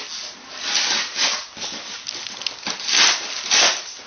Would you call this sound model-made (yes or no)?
no